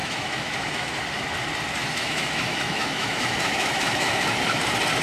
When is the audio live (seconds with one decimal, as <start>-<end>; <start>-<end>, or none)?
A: 1.0-1.8; 4.6-5.0